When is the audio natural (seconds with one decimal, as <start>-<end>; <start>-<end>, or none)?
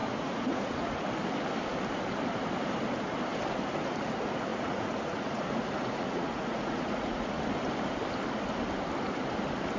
1.1-4.5; 7.4-9.8